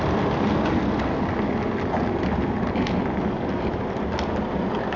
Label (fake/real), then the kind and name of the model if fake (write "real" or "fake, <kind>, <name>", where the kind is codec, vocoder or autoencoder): real